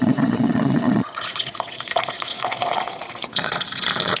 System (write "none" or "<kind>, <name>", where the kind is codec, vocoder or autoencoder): vocoder, Vocos